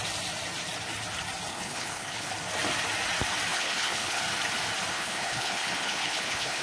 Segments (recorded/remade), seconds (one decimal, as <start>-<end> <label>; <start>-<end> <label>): 0.0-1.5 recorded; 1.5-2.3 remade; 2.3-3.5 recorded; 3.5-4.2 remade; 4.2-4.9 recorded; 4.9-6.6 remade